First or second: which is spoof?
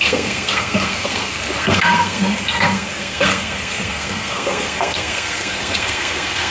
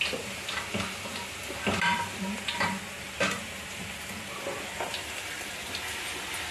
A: first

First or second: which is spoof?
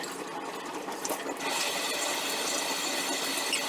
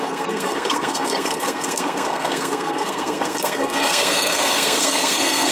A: second